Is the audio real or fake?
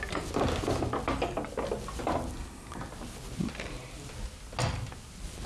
real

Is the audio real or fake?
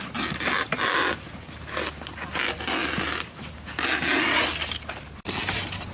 real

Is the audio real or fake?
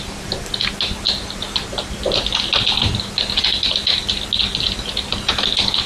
real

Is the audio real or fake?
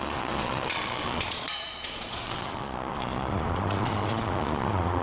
fake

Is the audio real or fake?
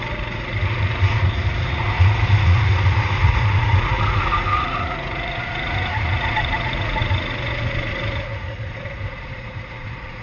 fake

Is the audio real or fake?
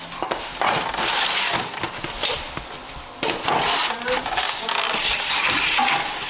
real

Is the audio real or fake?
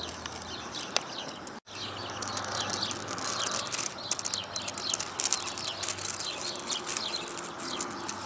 real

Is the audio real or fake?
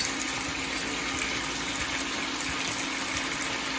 real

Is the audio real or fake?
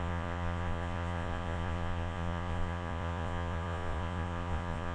fake